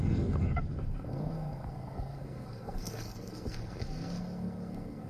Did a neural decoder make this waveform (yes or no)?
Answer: yes